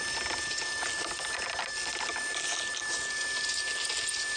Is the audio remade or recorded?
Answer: recorded